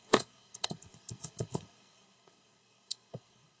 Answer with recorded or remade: remade